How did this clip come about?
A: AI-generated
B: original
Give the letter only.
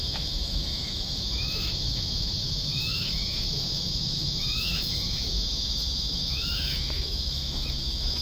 A